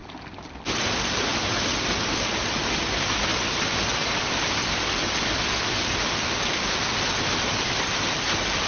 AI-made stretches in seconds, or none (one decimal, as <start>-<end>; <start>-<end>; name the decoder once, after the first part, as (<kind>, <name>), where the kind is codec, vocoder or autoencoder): 0.7-1.7 (vocoder, BigVGAN v2); 2.9-8.7